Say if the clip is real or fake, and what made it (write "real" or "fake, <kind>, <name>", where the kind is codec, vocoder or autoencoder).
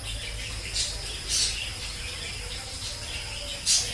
real